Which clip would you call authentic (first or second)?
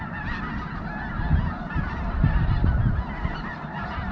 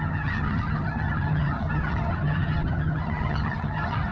first